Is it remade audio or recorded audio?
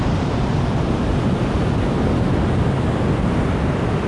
recorded